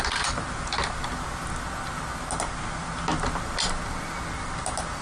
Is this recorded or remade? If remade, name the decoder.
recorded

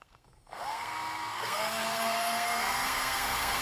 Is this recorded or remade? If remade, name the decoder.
remade, codec, SNAC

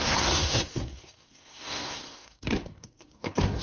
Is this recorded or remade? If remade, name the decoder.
remade, codec, SNAC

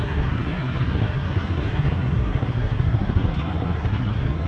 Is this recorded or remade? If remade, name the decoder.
remade, codec, SNAC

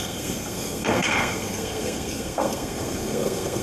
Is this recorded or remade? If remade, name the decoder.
remade, codec, SNAC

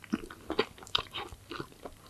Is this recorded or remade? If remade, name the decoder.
recorded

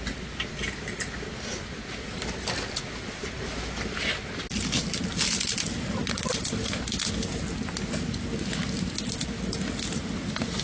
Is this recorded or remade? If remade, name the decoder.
recorded